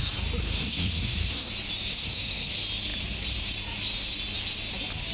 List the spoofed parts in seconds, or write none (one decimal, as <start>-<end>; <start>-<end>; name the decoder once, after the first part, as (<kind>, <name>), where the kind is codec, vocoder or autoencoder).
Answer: 0.4-1.5 (codec, SNAC); 1.9-2.5